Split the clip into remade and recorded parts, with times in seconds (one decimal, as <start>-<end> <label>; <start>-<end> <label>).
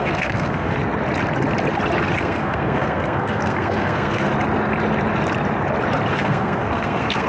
0.0-0.8 remade; 0.8-2.2 recorded; 2.2-4.3 remade; 4.3-6.1 recorded; 6.1-7.3 remade